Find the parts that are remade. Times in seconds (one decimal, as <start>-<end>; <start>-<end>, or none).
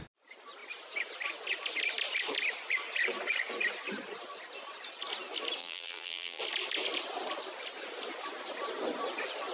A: 5.6-6.4